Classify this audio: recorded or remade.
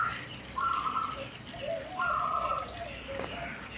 recorded